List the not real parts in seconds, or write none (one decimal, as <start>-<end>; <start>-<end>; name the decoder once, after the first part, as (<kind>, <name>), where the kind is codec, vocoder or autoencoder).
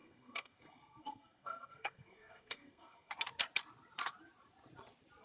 0.0-3.1 (codec, SNAC)